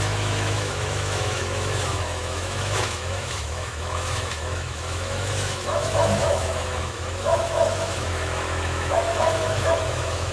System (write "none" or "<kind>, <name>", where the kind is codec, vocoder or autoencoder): autoencoder, DAC-VAE